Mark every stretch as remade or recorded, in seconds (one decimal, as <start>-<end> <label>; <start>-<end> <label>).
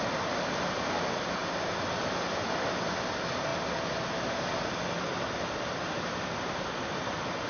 0.0-7.5 recorded